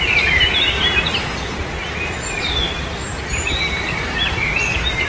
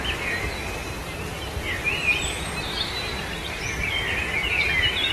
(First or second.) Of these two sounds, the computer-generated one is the first